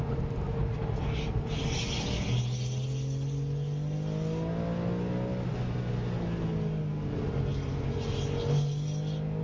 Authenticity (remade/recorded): recorded